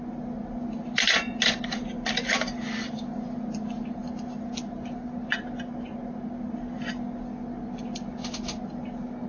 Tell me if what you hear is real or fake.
real